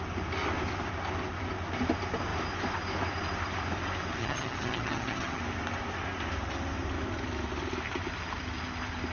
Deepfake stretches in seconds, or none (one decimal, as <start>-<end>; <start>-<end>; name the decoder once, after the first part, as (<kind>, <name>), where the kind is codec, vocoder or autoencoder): 4.2-5.4 (vocoder, HiFi-GAN)